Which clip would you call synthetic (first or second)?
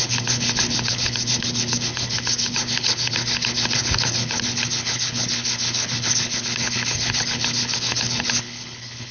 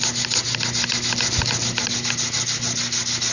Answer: first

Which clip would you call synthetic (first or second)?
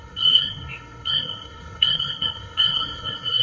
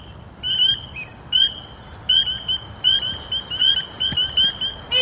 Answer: first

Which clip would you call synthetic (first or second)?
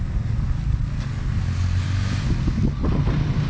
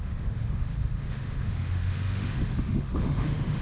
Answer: second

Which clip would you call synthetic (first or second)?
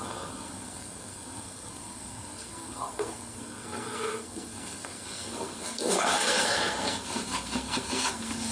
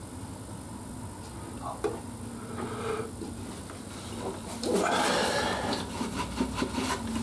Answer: first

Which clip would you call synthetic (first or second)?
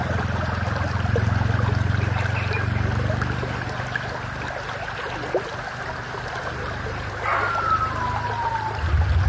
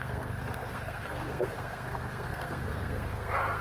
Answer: second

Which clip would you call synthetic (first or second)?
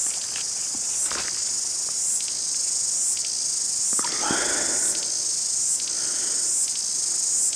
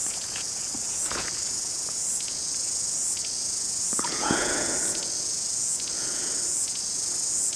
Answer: second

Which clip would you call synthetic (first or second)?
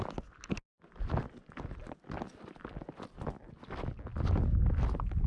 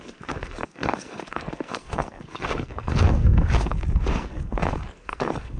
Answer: second